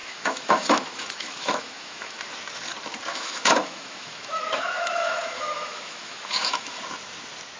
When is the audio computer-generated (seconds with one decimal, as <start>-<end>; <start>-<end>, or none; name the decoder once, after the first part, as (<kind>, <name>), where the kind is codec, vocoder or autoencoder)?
0.0-2.3 (autoencoder, DAC-VAE); 3.1-6.8